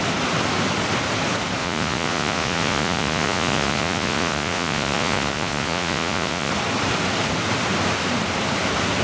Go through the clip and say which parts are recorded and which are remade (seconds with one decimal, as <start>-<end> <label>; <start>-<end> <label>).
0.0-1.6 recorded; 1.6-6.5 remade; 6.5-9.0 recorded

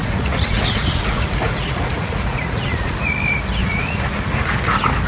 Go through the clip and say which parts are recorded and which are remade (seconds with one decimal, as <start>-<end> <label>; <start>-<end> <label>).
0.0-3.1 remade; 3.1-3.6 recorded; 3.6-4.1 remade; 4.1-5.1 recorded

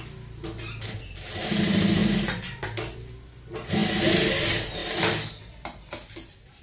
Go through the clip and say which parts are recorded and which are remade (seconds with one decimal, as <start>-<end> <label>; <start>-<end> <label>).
0.0-6.6 recorded